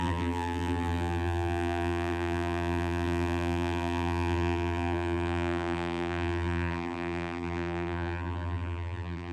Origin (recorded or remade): remade